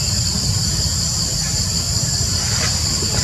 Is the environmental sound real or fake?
real